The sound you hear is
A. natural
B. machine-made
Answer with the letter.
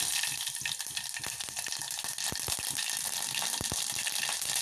A